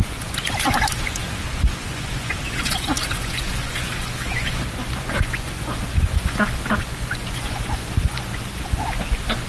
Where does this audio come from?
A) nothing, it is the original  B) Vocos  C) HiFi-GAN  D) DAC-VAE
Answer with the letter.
B